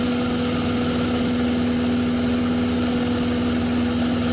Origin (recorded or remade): recorded